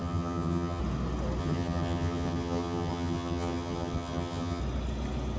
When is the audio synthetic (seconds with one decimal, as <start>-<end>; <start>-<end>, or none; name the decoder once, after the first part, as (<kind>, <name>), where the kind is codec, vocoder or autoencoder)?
0.0-0.8 (vocoder, HiFi-GAN); 1.4-4.6